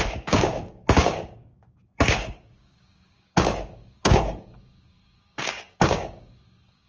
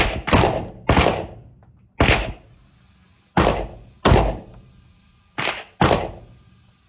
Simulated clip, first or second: first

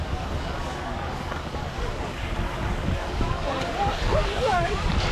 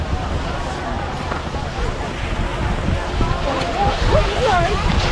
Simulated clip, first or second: first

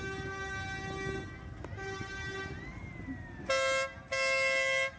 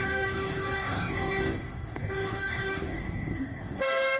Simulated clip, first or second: second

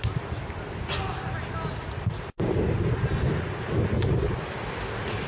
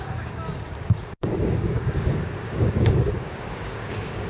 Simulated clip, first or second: second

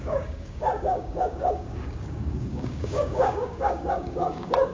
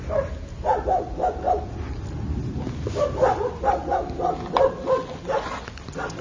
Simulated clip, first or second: first